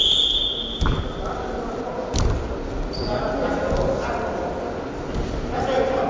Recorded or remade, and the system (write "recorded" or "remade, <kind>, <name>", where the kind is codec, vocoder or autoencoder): recorded